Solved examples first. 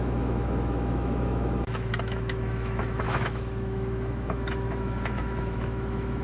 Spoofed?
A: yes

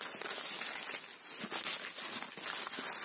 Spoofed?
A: no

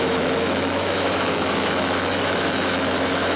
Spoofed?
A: yes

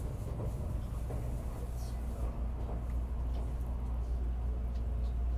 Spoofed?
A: no